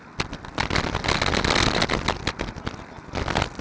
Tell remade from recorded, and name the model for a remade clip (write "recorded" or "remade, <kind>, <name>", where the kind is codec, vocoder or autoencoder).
recorded